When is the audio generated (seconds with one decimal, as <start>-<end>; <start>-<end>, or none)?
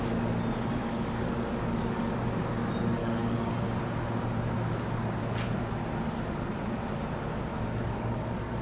0.8-2.1; 3.0-3.5; 7.5-8.6